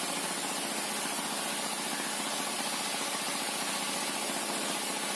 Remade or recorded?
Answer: recorded